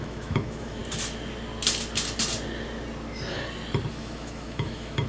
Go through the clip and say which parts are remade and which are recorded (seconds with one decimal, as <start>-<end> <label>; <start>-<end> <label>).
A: 0.0-0.8 remade; 0.8-3.9 recorded; 3.9-5.1 remade